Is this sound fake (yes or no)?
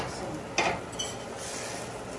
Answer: no